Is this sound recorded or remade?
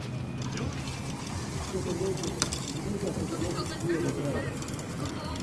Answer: recorded